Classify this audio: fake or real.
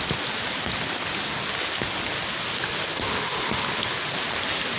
real